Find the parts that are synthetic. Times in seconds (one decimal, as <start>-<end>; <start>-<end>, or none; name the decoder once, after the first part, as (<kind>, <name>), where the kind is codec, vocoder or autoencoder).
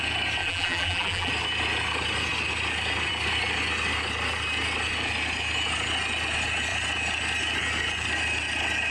0.4-1.3 (vocoder, BigVGAN v2)